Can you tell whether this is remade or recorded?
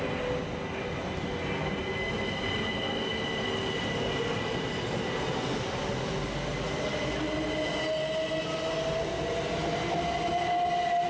recorded